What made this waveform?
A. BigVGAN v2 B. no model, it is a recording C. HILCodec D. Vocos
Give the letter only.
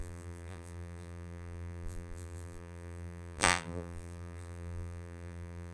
A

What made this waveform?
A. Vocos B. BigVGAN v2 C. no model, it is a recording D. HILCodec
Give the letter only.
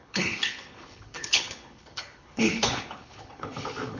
D